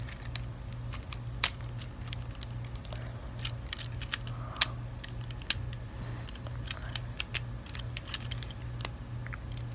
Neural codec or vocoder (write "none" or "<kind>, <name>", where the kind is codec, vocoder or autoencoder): none